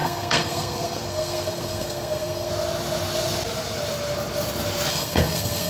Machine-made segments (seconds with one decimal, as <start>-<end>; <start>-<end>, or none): 0.0-2.5; 4.9-5.7

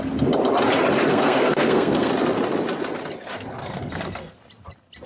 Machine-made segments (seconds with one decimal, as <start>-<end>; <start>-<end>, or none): 1.1-2.1; 3.6-4.3